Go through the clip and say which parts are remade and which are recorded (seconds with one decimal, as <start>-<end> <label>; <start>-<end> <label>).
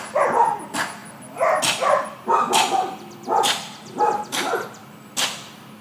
0.0-5.8 recorded